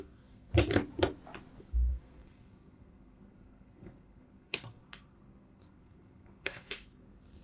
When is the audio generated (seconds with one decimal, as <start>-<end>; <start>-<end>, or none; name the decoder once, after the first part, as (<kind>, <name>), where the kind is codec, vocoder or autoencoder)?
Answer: 0.0-0.5 (codec, SNAC); 1.6-7.4